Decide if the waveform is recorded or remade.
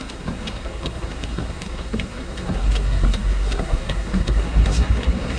remade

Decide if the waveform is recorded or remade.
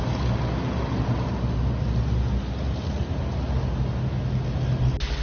recorded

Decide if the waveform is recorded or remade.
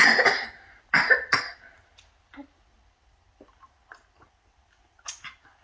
recorded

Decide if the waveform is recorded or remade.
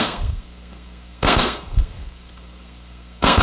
remade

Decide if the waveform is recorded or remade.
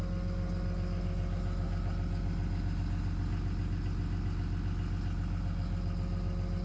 recorded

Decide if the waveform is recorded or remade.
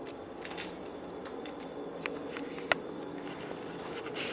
recorded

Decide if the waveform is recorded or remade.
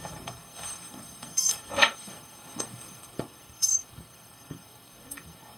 remade